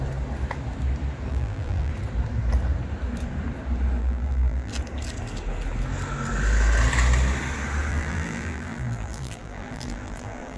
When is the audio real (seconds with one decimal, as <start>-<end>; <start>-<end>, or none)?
0.0-1.3; 1.9-4.0; 4.7-7.9